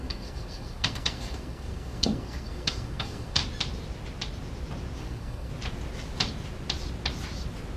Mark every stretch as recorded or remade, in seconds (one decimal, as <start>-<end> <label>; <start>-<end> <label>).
0.0-3.4 remade; 3.4-5.0 recorded; 5.0-5.5 remade; 5.5-7.8 recorded